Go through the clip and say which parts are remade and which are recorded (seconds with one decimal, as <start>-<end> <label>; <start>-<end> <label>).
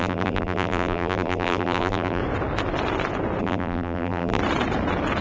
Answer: 0.0-2.2 remade; 2.2-3.4 recorded; 3.4-4.4 remade; 4.4-5.2 recorded